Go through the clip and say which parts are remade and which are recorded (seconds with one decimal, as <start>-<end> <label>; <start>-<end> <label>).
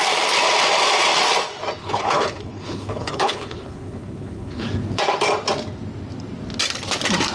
0.0-1.8 recorded; 1.8-4.7 remade; 4.7-7.3 recorded